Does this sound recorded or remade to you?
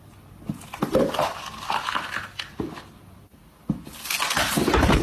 recorded